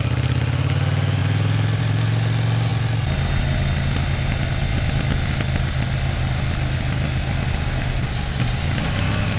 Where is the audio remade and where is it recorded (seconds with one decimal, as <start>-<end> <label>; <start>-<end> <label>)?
0.0-9.4 recorded